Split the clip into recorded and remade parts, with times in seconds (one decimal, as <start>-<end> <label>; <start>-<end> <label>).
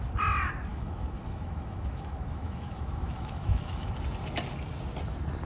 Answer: 0.0-0.7 recorded; 0.7-3.9 remade; 3.9-5.5 recorded